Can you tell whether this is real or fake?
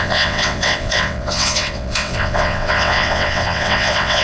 fake